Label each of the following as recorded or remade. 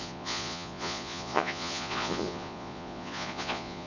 remade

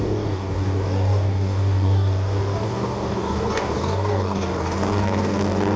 remade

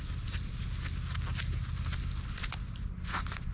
recorded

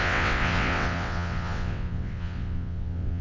remade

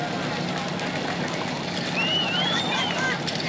recorded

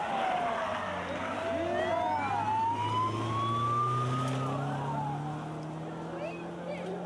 recorded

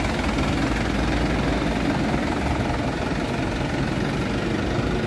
recorded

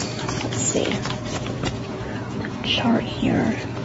remade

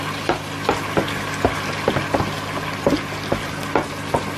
recorded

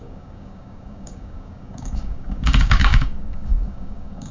remade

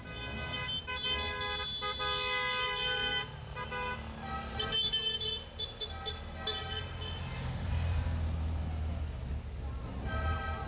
recorded